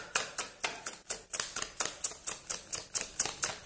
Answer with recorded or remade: recorded